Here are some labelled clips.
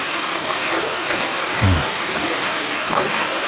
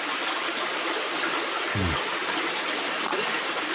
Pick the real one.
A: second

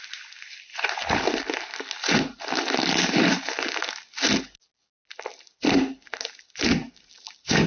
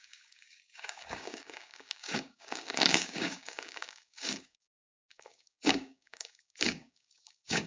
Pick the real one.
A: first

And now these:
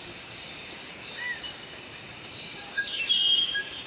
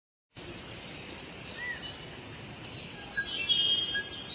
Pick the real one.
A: second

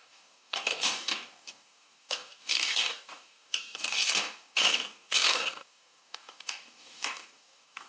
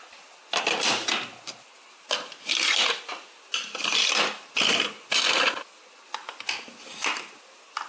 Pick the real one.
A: second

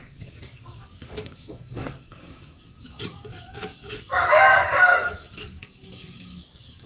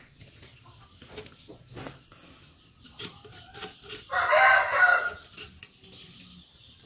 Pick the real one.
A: second